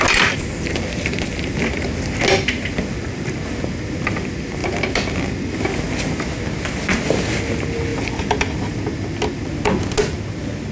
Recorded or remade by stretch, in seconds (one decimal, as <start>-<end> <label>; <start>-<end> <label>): 0.0-10.7 recorded

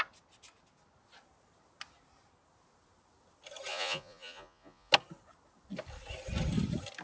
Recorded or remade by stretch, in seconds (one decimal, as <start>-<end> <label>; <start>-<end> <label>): 0.0-3.7 recorded; 3.7-4.9 remade; 4.9-7.0 recorded